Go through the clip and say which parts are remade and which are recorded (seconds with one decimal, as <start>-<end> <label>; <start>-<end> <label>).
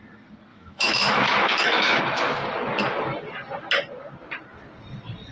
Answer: 0.0-0.5 recorded; 0.5-2.0 remade; 2.0-5.3 recorded